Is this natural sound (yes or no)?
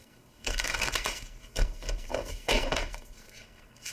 no